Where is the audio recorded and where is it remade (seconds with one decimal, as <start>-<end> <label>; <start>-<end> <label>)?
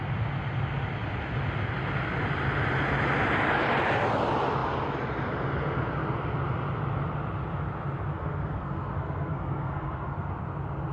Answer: 0.0-8.1 recorded; 8.1-10.3 remade; 10.3-10.9 recorded